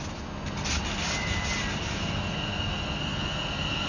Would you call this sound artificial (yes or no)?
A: no